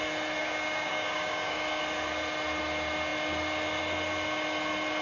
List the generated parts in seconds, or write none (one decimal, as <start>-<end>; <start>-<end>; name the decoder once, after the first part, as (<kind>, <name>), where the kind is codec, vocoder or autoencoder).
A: 0.4-1.8 (codec, DAC)

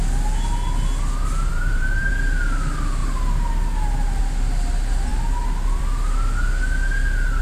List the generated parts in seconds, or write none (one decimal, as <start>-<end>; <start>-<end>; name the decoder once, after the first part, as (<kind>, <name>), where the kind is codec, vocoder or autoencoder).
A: 1.5-2.1 (vocoder, BigVGAN v2)

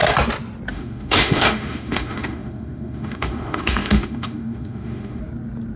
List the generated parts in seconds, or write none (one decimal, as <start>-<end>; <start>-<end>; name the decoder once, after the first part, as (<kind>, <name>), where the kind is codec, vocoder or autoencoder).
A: 0.7-5.2 (autoencoder, DAC-VAE)

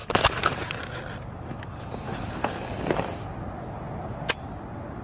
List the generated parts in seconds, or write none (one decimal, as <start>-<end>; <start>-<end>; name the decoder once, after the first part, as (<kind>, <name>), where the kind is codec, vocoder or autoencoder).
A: none

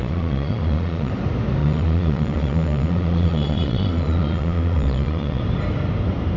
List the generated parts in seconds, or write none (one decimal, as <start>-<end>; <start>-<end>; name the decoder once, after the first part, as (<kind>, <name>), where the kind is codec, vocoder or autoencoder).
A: 0.0-1.1 (vocoder, Vocos); 1.6-5.4